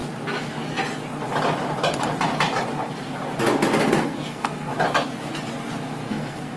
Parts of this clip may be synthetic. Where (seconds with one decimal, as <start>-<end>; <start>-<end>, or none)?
3.8-4.7; 6.1-6.6